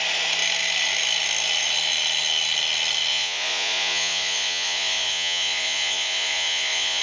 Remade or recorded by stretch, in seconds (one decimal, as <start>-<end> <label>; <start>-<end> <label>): 0.0-3.1 recorded; 3.1-7.0 remade